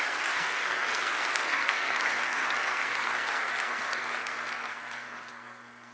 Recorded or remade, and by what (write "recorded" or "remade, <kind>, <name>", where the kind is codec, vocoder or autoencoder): remade, codec, SNAC